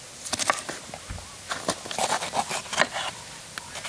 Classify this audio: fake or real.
real